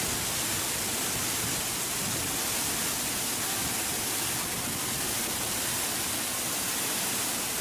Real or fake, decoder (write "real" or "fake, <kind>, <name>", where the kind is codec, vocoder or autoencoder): real